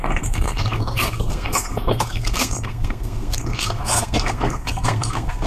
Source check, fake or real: fake